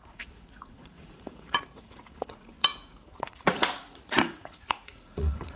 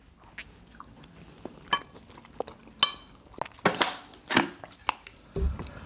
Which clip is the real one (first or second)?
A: second